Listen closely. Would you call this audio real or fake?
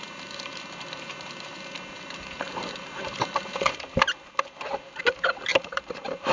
fake